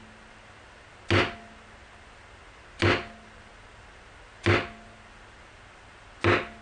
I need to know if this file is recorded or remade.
recorded